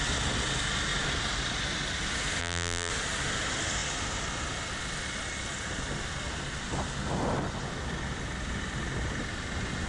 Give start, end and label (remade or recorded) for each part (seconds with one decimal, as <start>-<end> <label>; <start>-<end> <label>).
0.0-2.4 recorded; 2.4-2.9 remade; 2.9-9.9 recorded

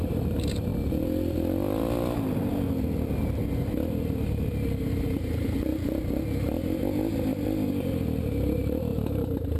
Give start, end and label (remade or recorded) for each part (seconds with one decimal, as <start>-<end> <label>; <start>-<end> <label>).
0.0-0.7 remade; 0.7-5.0 recorded; 5.0-5.7 remade; 5.7-8.2 recorded; 8.2-9.6 remade

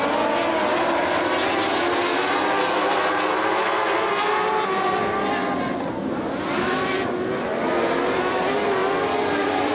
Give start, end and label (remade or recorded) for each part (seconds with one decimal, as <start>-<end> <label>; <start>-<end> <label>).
0.0-9.7 recorded

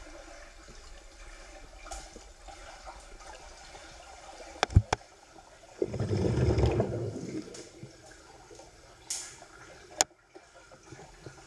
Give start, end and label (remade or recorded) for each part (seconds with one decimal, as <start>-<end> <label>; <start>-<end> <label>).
0.0-11.5 recorded

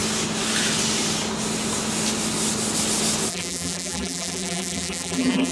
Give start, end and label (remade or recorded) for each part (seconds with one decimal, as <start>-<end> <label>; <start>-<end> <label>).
0.0-3.3 recorded; 3.3-5.5 remade

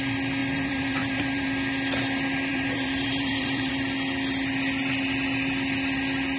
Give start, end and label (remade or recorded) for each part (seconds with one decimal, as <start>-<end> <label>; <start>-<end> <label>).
0.0-0.4 recorded; 0.4-1.5 remade; 1.5-2.5 recorded; 2.5-3.7 remade; 3.7-6.4 recorded

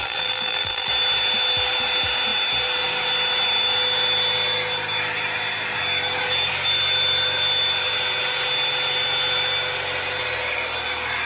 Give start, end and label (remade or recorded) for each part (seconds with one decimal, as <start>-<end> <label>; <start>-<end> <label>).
0.0-0.9 remade; 0.9-11.3 recorded

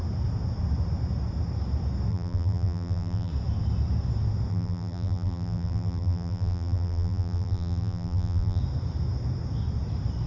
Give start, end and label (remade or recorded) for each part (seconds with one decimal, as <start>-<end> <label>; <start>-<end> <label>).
0.0-2.1 recorded; 2.1-3.3 remade; 3.3-4.5 recorded; 4.5-8.6 remade; 8.6-10.3 recorded